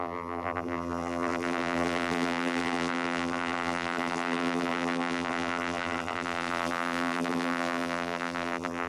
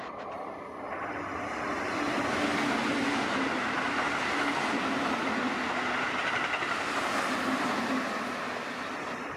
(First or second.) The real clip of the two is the second